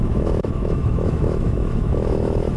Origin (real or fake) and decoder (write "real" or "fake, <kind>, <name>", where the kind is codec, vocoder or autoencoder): fake, autoencoder, DAC-VAE